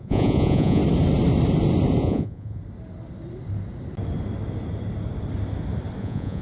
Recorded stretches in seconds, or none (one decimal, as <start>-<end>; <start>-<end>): 0.8-2.0; 2.6-6.0

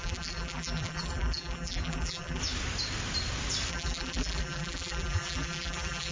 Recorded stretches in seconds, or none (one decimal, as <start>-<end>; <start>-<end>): 2.4-3.7